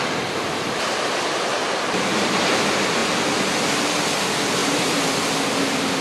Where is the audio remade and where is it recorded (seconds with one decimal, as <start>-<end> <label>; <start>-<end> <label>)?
0.0-1.5 recorded; 1.5-2.6 remade; 2.6-4.6 recorded; 4.6-5.1 remade; 5.1-6.0 recorded